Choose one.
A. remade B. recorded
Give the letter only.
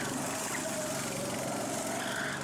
B